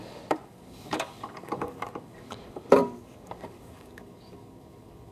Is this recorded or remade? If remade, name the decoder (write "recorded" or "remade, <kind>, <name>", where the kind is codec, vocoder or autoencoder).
remade, codec, DAC